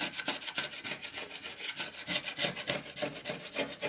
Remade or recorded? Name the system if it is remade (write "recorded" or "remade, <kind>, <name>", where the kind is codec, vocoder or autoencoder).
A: recorded